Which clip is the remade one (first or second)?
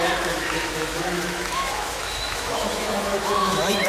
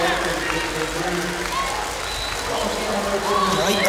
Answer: first